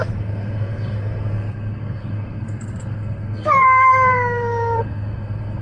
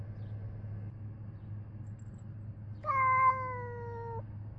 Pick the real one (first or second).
second